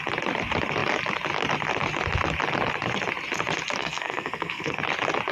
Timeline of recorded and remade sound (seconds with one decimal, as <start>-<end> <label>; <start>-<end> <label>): 0.0-3.8 recorded; 3.8-4.8 remade; 4.8-5.3 recorded